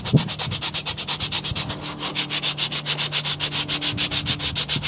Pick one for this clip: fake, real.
real